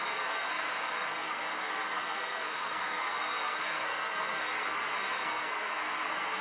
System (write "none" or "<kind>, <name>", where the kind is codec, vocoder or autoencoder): codec, SNAC